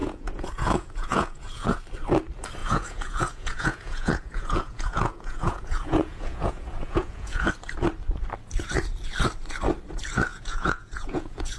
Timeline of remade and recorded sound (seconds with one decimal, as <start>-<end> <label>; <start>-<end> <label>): 0.0-1.8 remade; 1.8-2.6 recorded; 2.6-7.5 remade; 7.5-10.3 recorded; 10.3-11.6 remade